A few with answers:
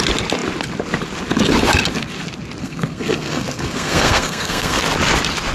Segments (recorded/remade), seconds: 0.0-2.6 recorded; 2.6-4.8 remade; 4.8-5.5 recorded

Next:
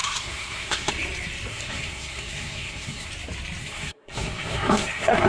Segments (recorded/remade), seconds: 0.0-0.9 remade; 0.9-1.5 recorded; 1.5-3.1 remade; 3.1-3.6 recorded; 3.6-5.3 remade